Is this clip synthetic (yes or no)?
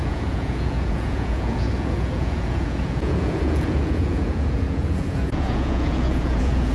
yes